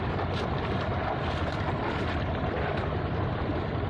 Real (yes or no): yes